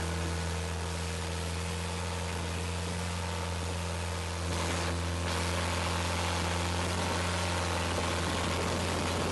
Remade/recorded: recorded